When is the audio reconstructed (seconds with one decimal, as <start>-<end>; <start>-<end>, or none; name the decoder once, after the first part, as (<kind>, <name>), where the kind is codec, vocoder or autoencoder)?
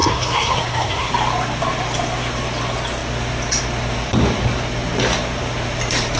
0.0-1.1 (codec, SNAC)